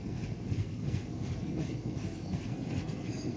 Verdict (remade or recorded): remade